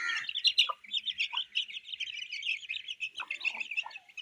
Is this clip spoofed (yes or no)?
no